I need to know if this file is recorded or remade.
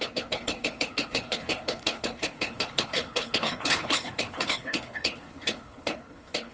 remade